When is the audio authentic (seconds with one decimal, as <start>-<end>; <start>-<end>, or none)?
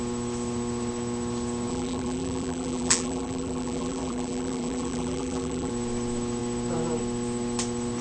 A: 0.0-1.7; 5.7-8.0